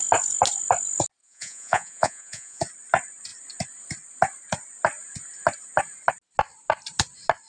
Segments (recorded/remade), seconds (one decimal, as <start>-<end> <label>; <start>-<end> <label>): 0.0-1.2 recorded; 1.2-2.6 remade; 2.6-7.5 recorded